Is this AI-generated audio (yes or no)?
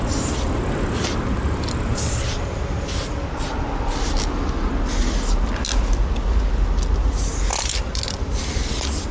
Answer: no